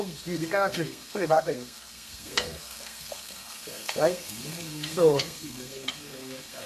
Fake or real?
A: fake